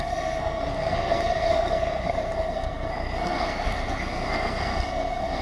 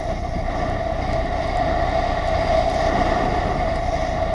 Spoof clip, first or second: first